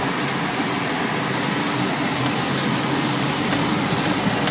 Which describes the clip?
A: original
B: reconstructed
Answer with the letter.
A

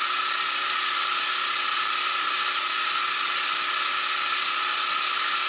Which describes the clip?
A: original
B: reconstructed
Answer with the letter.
A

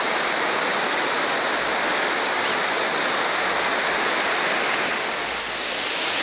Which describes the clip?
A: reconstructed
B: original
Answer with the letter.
B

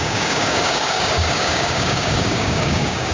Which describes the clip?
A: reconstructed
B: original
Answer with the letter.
A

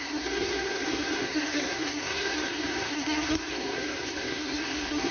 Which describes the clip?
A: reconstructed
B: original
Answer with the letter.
A